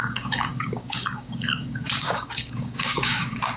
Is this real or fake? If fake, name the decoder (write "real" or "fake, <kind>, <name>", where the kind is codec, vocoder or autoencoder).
fake, codec, DAC